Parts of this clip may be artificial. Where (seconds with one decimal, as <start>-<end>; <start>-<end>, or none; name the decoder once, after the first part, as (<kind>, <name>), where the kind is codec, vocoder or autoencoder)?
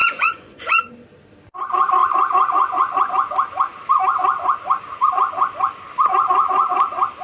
0.0-0.9 (vocoder, Vocos); 2.0-3.1